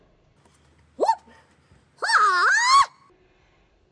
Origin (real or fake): real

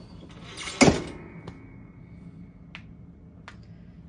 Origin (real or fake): real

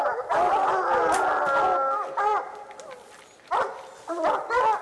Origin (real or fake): real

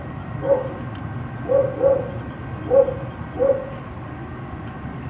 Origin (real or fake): real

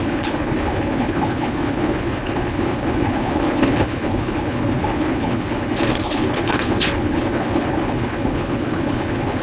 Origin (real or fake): fake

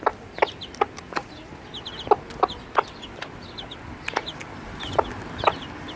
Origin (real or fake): real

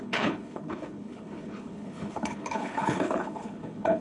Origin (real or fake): fake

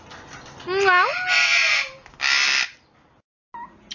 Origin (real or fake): real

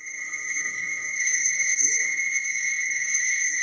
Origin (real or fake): fake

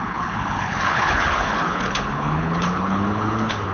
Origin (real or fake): fake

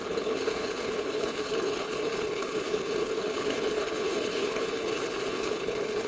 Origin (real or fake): fake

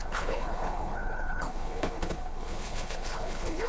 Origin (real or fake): fake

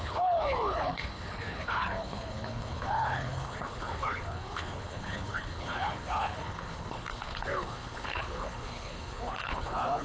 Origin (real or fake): fake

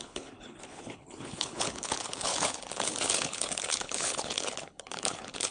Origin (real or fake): fake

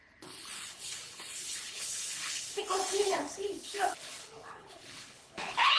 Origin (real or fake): fake